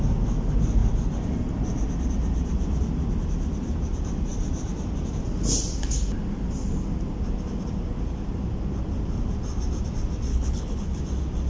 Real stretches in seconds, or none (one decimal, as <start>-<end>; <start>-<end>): 0.0-10.3; 11.0-11.5